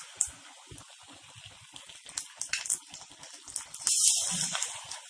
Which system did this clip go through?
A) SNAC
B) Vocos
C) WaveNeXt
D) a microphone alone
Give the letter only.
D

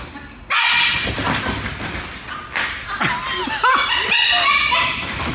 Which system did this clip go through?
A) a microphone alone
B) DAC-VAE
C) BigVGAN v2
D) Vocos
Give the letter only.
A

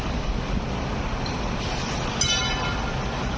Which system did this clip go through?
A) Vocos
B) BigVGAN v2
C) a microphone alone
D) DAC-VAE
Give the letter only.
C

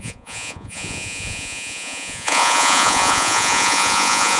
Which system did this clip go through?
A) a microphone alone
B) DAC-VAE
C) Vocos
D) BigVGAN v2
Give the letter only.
C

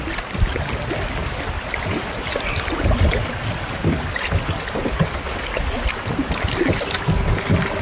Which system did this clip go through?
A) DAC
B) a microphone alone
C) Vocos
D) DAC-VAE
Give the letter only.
B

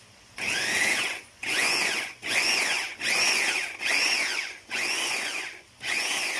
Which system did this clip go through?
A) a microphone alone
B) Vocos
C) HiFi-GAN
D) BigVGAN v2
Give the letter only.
B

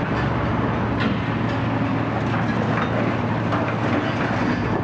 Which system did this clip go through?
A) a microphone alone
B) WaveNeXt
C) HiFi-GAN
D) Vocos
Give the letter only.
A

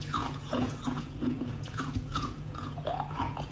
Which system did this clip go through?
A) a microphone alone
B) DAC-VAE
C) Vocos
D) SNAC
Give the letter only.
C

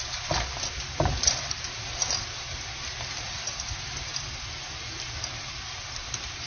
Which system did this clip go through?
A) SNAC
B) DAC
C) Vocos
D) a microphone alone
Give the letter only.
D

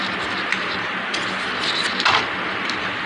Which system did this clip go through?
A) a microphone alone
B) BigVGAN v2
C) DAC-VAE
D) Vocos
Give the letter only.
A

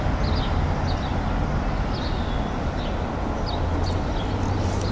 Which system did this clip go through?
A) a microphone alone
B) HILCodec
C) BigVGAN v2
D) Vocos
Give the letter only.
A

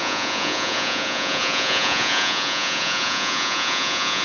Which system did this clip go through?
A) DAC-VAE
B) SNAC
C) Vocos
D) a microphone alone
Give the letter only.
C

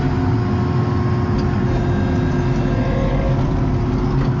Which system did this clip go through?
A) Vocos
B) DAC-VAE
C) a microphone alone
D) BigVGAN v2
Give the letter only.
C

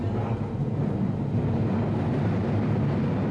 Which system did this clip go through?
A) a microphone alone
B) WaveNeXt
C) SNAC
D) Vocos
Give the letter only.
A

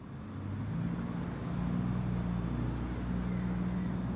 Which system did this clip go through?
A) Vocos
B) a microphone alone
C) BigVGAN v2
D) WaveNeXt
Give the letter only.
B